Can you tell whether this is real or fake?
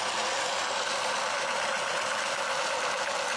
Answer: real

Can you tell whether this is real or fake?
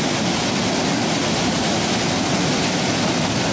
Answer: real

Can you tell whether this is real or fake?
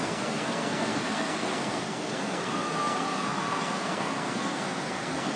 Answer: fake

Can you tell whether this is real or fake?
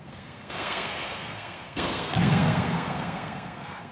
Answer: fake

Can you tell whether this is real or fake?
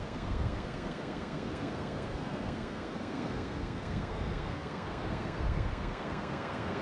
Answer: fake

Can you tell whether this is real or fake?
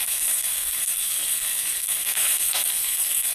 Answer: fake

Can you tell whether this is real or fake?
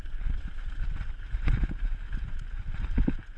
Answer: real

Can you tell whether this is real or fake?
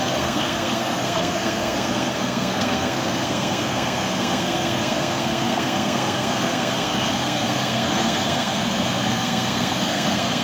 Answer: fake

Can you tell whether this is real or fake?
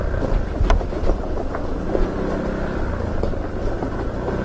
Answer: real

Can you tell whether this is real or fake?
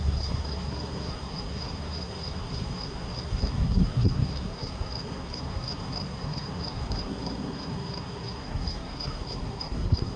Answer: fake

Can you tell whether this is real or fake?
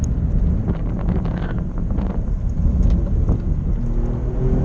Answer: real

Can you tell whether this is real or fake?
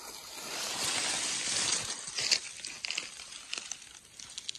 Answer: real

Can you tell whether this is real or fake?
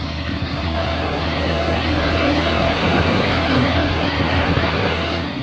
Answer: fake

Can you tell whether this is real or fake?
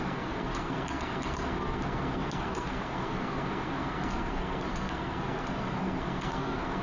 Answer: fake